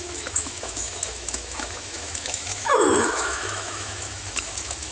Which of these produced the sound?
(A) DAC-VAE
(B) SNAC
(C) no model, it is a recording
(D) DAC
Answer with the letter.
A